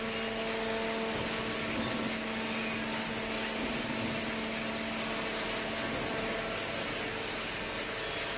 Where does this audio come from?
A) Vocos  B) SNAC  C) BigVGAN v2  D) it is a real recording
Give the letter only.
D